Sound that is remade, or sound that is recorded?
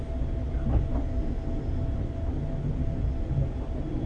recorded